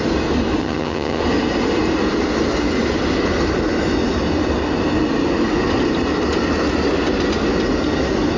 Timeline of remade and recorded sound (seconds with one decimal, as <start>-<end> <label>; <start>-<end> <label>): 0.0-0.6 recorded; 0.6-1.2 remade; 1.2-8.4 recorded